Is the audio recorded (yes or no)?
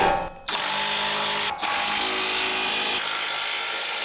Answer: yes